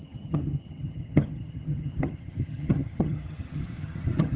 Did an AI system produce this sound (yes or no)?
yes